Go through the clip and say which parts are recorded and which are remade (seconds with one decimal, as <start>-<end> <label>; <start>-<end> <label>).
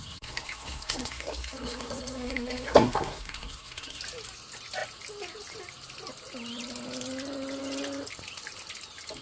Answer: 0.0-4.0 remade; 4.0-9.2 recorded